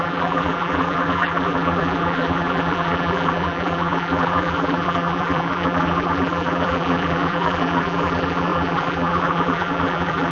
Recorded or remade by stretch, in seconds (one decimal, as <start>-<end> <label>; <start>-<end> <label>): 0.0-10.3 remade